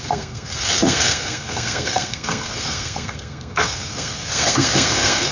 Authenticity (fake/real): fake